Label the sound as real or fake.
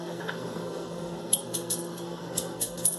fake